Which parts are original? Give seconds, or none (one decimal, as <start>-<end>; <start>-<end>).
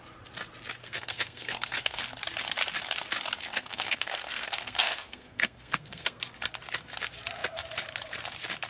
0.0-0.8; 2.0-3.5; 6.2-8.7